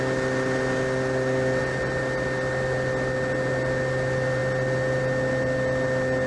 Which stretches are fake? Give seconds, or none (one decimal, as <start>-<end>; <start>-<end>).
none